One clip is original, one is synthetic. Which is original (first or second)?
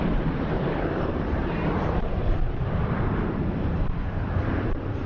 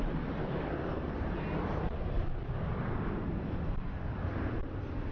second